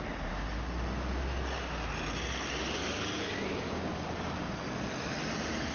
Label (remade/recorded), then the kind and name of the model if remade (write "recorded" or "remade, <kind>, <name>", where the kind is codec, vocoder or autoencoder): recorded